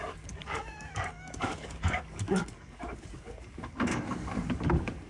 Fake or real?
fake